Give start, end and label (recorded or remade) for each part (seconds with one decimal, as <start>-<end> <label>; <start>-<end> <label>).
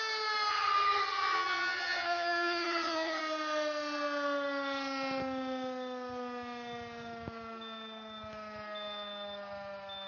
0.0-0.5 recorded; 0.5-3.2 remade; 3.2-10.1 recorded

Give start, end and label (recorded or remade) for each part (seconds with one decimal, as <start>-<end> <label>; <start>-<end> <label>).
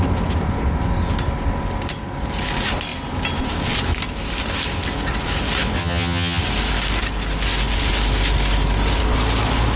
0.0-5.8 recorded; 5.8-6.4 remade; 6.4-9.8 recorded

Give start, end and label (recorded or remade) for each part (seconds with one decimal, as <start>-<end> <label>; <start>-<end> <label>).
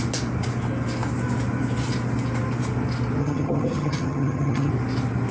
0.0-3.2 recorded; 3.2-4.7 remade; 4.7-5.3 recorded